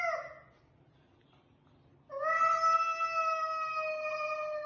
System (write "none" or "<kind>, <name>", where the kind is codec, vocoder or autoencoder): none